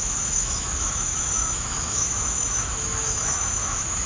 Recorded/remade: remade